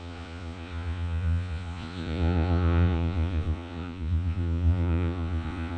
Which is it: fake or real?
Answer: fake